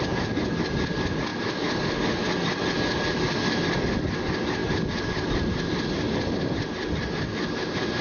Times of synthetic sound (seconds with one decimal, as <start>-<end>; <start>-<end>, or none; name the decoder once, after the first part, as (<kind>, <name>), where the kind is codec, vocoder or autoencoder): none